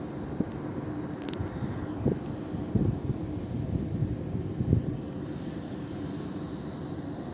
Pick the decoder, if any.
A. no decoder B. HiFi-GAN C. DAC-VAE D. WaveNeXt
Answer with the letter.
A